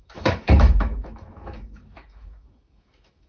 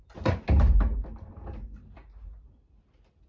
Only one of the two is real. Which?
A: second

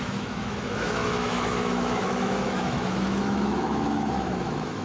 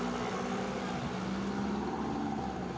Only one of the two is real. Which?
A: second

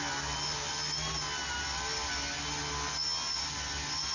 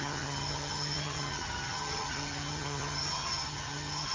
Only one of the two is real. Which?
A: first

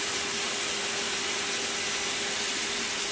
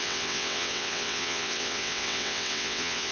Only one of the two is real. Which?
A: first